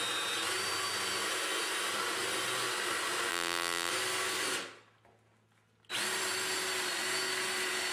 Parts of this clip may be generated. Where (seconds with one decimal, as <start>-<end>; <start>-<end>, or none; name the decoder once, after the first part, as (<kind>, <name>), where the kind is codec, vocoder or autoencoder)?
3.3-3.9 (vocoder, BigVGAN v2)